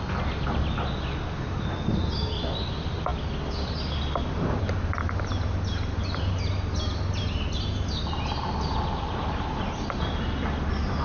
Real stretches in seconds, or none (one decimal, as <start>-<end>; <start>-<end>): 0.0-11.0